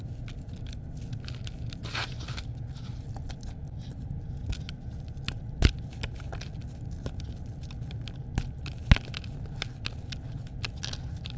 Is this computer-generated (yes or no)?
no